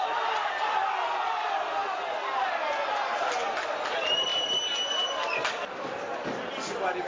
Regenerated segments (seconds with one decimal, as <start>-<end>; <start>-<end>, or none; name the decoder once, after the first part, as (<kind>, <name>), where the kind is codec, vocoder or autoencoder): none